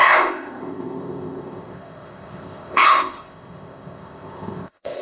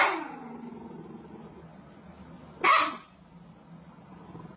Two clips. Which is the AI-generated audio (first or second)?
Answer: first